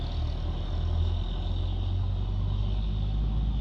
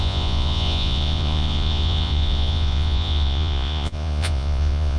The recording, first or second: first